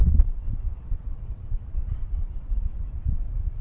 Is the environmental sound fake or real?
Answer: fake